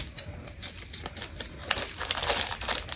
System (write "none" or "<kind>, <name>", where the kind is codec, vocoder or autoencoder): none